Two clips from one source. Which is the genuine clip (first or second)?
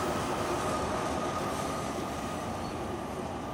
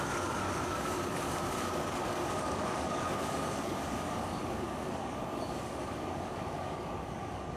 first